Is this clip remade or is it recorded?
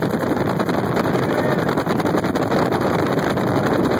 remade